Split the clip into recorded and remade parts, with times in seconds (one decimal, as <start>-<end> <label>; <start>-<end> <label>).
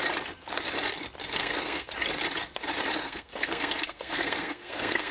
0.0-1.4 recorded; 1.4-1.9 remade; 1.9-3.0 recorded; 3.0-5.1 remade